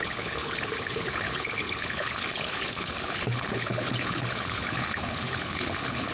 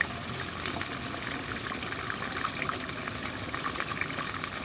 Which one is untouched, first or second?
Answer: second